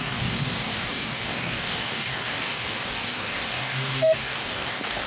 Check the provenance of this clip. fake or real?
fake